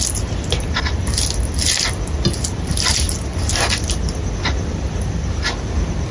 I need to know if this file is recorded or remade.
recorded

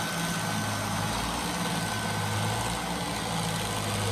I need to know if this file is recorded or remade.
recorded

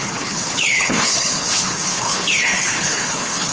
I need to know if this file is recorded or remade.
remade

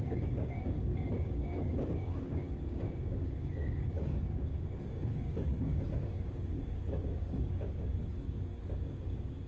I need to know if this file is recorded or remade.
remade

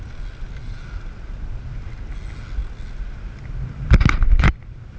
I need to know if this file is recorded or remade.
recorded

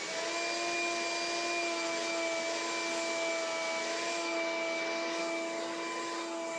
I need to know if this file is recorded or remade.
recorded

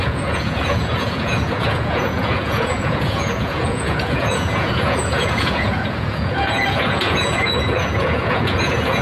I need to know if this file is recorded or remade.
remade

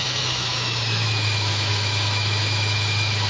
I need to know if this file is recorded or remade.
remade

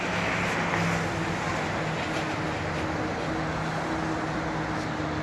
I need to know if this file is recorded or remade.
recorded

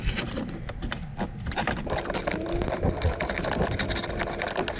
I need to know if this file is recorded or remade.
recorded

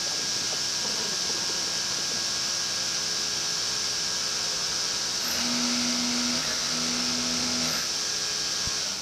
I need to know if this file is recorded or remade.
recorded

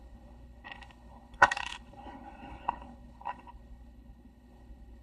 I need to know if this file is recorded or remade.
remade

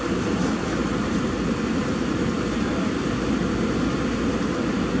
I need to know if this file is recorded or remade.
recorded